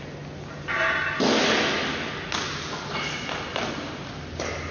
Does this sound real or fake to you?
real